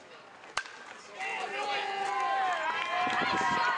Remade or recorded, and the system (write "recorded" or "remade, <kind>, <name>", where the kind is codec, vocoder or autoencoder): recorded